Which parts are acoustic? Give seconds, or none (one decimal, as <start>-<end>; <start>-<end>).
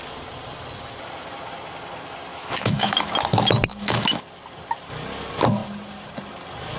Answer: 0.0-2.3; 3.1-3.7; 4.2-6.8